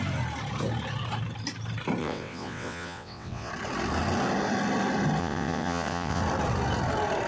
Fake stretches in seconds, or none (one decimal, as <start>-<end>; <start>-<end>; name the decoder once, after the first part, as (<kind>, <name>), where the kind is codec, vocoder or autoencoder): 2.0-3.5 (vocoder, WaveNeXt); 5.2-6.2